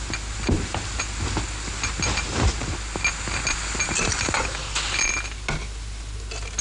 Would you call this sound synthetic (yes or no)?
no